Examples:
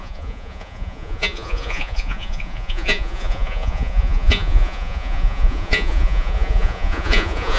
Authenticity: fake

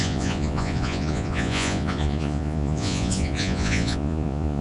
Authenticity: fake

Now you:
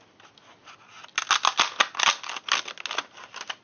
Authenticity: real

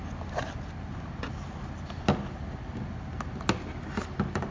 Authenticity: real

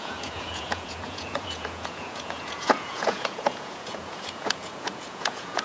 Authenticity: fake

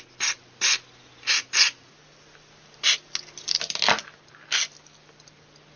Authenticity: real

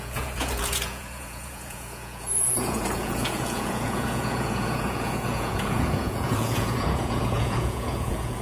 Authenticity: fake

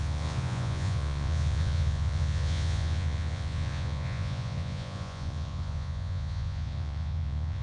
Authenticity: fake